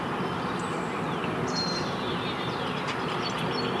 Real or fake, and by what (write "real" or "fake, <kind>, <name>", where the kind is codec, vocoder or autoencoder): real